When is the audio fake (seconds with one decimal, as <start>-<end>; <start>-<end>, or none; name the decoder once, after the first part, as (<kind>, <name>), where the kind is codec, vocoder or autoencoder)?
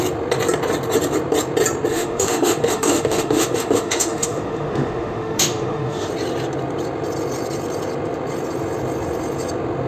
1.9-6.1 (autoencoder, DAC-VAE)